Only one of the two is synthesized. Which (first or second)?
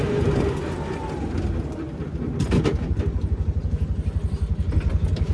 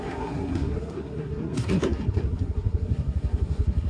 second